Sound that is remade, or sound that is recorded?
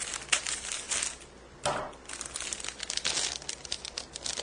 recorded